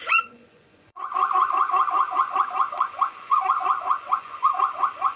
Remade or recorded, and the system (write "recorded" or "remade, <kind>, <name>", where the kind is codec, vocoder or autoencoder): remade, vocoder, Vocos